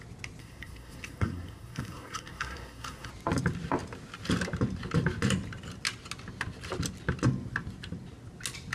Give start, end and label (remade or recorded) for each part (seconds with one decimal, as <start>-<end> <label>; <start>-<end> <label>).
0.0-0.4 recorded; 0.4-3.1 remade; 3.1-8.7 recorded